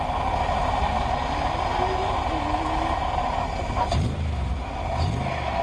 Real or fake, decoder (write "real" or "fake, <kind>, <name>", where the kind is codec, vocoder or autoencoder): real